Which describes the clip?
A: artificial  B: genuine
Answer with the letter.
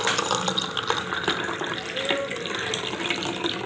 B